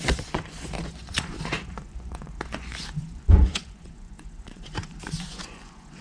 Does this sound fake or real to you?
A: fake